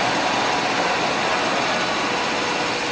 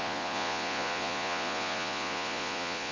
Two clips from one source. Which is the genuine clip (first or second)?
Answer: first